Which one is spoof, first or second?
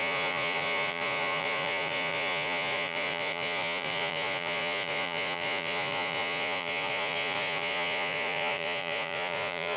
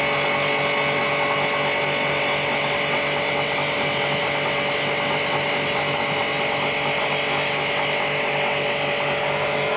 first